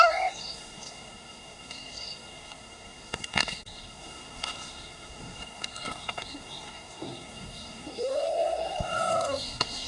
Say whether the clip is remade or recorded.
remade